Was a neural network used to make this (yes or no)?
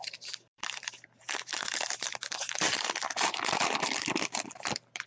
yes